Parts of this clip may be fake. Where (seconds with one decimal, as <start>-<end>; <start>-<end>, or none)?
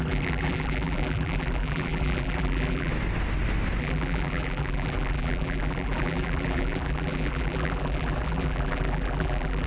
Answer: 0.0-2.9; 3.8-9.7